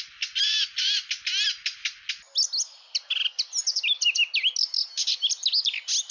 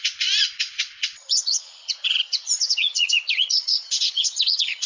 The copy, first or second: second